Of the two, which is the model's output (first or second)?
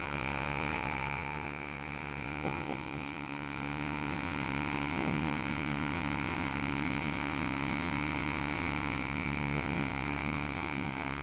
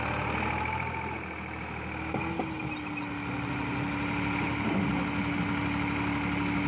first